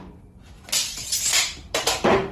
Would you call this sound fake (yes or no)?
no